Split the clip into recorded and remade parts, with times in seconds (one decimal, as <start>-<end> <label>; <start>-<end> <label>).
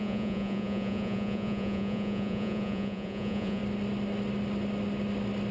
0.0-3.6 remade; 3.6-5.5 recorded